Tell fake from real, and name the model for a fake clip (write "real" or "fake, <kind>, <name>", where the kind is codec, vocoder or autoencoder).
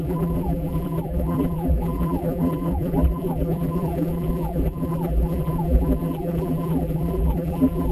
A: fake, vocoder, BigVGAN v2